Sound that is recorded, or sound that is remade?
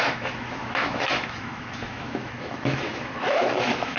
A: remade